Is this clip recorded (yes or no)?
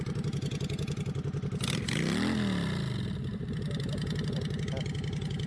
yes